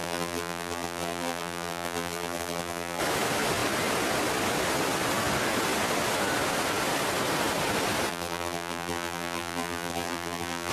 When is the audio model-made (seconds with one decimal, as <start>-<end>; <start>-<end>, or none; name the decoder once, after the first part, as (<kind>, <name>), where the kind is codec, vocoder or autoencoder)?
0.0-3.0 (vocoder, BigVGAN v2); 8.1-10.7